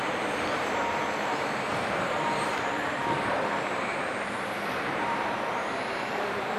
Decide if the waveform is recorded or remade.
remade